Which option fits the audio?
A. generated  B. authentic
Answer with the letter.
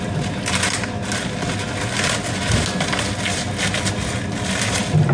B